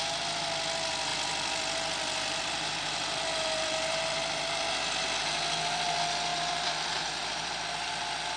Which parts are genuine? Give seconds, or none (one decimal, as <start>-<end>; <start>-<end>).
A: 0.0-1.1; 4.7-6.3; 7.9-8.4